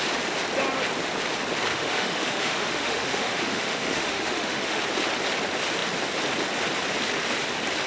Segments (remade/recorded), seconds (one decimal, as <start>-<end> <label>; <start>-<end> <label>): 0.0-1.7 recorded; 1.7-4.8 remade; 4.8-7.9 recorded